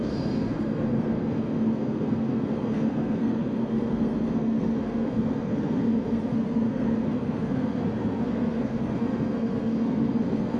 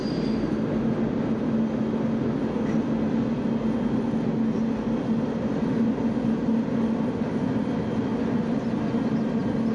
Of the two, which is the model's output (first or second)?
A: first